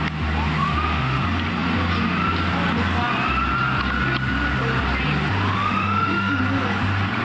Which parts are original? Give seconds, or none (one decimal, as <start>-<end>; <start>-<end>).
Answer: 0.0-0.6; 1.2-5.6; 6.4-7.2